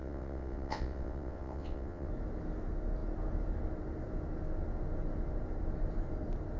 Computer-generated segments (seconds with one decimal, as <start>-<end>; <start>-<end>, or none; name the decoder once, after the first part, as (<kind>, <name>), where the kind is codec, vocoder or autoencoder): 0.0-2.1 (vocoder, WaveNeXt)